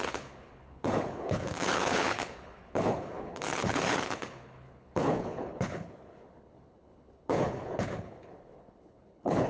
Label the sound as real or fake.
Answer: fake